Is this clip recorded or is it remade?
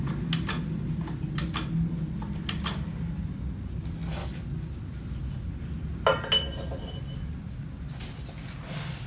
recorded